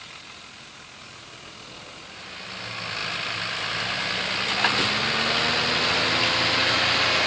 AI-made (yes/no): no